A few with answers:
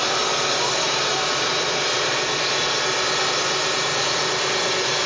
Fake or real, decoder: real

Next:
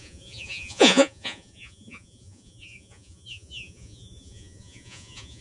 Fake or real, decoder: fake, vocoder, Vocos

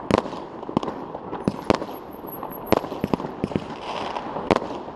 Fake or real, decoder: real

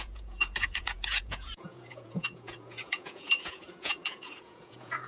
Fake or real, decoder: fake, vocoder, Vocos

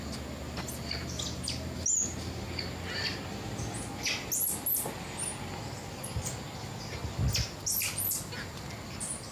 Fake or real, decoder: real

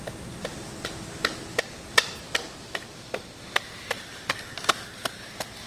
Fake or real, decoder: real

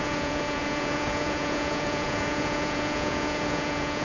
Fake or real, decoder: fake, vocoder, Vocos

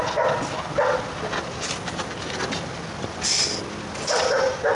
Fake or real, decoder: real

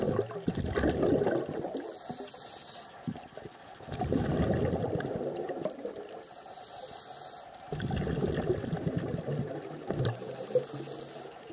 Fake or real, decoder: real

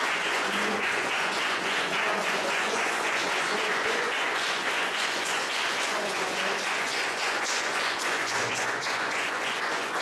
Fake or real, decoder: fake, vocoder, Vocos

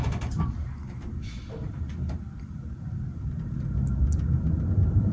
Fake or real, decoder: real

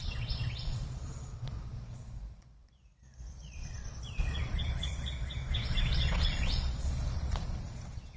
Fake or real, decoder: fake, vocoder, Vocos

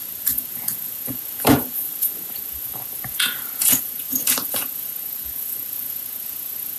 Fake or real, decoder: fake, vocoder, Vocos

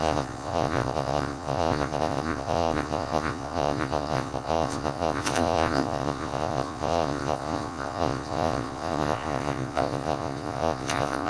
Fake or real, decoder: fake, vocoder, Vocos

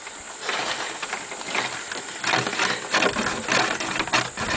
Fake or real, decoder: real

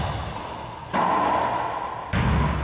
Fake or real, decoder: real